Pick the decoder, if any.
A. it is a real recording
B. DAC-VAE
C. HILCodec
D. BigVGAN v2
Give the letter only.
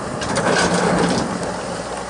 A